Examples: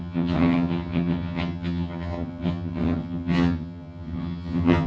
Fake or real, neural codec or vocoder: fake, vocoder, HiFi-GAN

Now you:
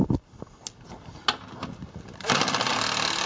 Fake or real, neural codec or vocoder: real